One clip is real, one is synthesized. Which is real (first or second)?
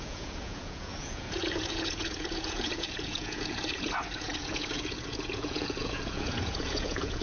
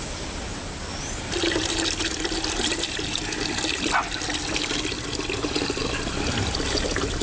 second